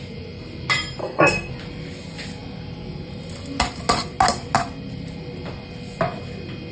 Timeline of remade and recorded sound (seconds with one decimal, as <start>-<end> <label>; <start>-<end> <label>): 0.0-1.0 recorded; 1.0-1.5 remade; 1.5-6.7 recorded